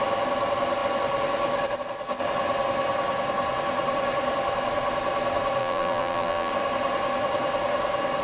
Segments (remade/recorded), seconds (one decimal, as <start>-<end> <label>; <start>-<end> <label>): 0.0-5.6 recorded; 5.6-6.5 remade; 6.5-8.2 recorded